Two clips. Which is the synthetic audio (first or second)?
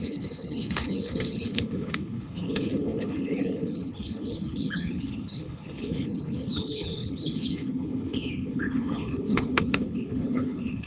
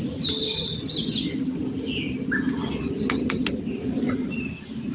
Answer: first